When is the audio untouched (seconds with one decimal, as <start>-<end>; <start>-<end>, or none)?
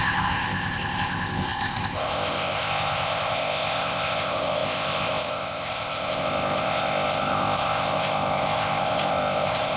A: none